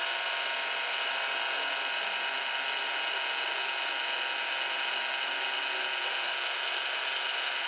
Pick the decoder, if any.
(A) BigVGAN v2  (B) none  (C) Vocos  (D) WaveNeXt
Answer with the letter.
B